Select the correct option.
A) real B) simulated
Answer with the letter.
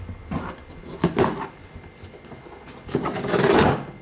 A